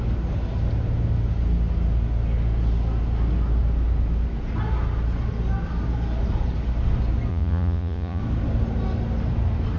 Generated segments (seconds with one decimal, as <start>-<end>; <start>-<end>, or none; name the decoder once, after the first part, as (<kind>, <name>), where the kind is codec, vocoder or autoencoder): 7.3-8.2 (vocoder, Vocos)